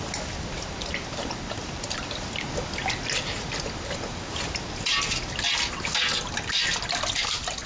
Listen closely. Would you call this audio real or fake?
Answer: real